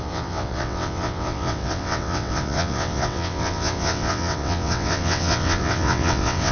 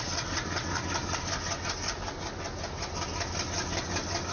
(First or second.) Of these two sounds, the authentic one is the second